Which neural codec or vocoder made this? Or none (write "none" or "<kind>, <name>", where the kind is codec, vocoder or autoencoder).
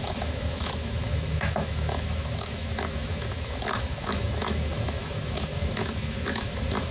autoencoder, DAC-VAE